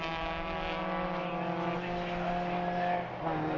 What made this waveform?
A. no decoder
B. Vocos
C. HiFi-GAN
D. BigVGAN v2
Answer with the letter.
A